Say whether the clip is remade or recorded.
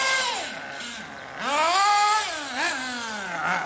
recorded